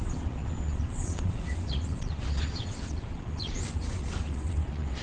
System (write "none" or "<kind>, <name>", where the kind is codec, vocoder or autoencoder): vocoder, WaveNeXt